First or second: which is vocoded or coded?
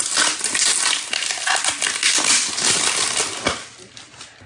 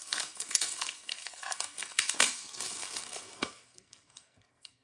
second